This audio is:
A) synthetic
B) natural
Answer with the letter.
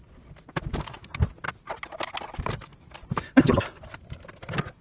B